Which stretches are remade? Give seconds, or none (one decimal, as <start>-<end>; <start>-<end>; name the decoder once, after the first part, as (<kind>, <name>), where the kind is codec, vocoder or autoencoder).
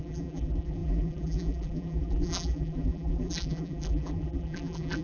0.0-5.0 (vocoder, BigVGAN v2)